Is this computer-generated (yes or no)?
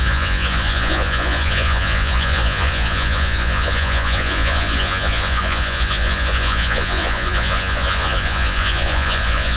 yes